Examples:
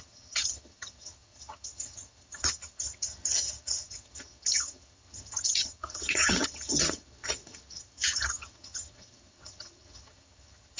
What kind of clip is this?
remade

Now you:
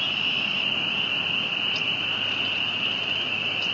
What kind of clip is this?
recorded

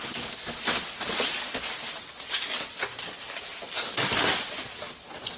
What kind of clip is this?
recorded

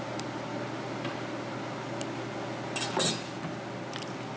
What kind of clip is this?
recorded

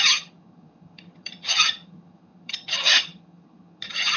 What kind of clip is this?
remade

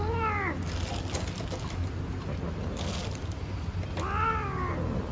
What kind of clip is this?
recorded